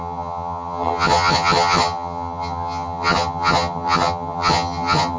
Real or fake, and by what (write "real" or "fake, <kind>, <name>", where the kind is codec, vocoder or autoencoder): fake, vocoder, HiFi-GAN